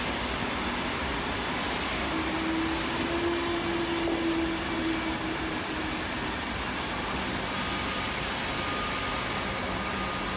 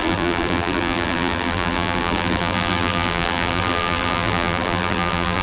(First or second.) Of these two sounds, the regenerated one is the second